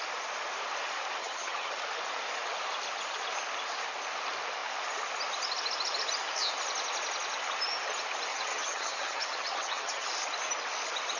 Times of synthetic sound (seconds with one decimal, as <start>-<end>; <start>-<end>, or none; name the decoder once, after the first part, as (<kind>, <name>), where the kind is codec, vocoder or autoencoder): 1.2-1.8 (vocoder, HiFi-GAN); 8.3-10.1